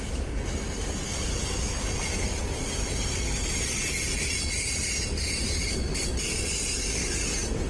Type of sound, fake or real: real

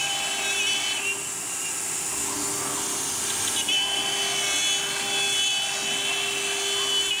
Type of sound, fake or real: real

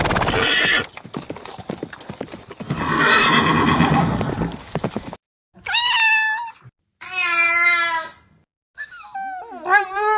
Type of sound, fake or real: real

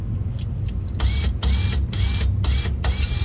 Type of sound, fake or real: real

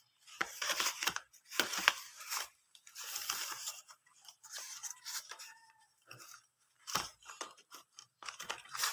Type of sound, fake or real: fake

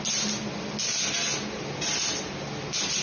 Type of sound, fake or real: real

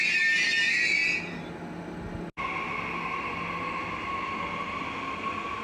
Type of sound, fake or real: real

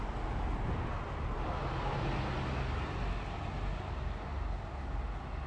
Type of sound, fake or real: real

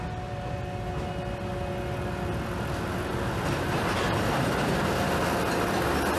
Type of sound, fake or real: real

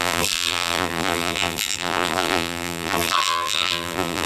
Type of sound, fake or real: fake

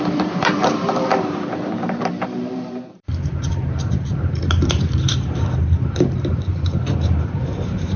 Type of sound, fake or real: fake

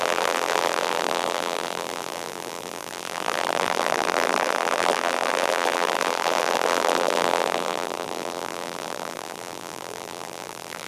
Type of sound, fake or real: fake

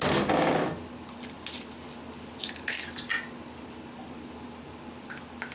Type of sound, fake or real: real